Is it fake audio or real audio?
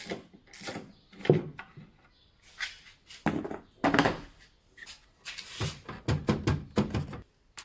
real